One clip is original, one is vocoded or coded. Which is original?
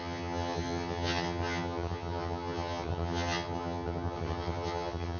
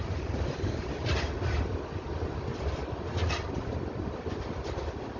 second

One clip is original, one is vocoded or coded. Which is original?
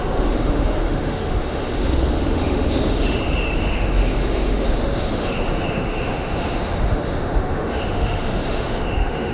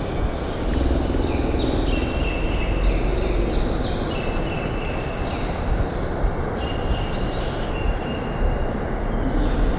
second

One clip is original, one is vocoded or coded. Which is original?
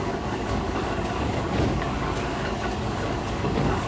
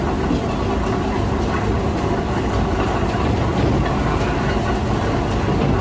second